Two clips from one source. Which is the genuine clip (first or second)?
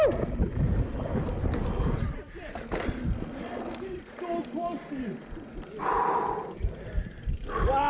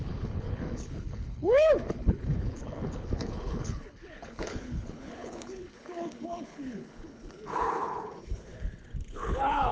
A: first